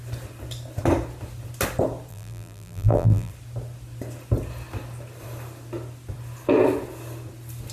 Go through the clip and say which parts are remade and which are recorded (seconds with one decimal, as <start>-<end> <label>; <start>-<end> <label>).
0.0-2.1 recorded; 2.1-3.3 remade; 3.3-7.7 recorded